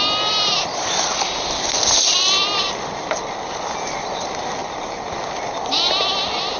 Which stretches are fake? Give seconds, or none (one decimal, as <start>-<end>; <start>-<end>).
none